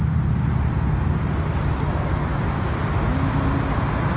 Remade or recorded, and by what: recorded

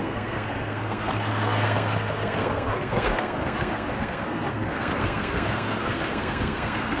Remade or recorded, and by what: remade, codec, SNAC